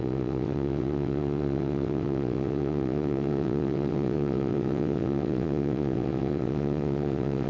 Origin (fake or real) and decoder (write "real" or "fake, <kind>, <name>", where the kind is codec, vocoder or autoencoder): fake, vocoder, WaveNeXt